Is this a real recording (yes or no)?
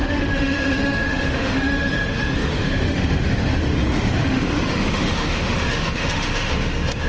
no